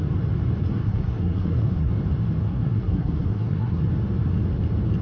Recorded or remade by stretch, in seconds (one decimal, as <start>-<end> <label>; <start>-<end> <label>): 0.0-0.6 recorded; 0.6-1.9 remade; 1.9-2.4 recorded; 2.4-3.8 remade; 3.8-5.0 recorded

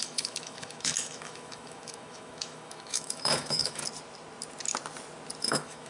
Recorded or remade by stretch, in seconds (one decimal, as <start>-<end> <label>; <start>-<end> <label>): 0.0-3.8 remade; 3.8-5.4 recorded; 5.4-5.9 remade

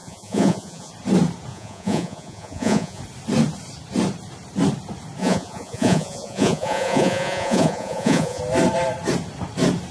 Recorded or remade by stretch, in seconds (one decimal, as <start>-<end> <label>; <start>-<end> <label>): 0.0-0.9 remade; 0.9-1.5 recorded; 1.5-3.0 remade; 3.0-5.2 recorded; 5.2-8.4 remade; 8.4-9.9 recorded

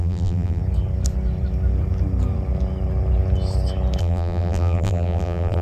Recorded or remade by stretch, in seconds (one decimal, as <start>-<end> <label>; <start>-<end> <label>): 0.0-0.6 remade; 0.6-4.0 recorded; 4.0-5.6 remade